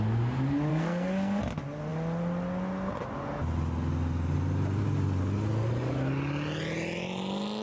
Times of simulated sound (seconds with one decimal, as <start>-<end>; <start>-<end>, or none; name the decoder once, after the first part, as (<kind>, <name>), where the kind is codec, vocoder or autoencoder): 0.7-1.4 (codec, SNAC)